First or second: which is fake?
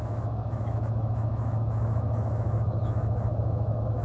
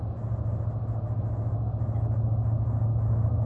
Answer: first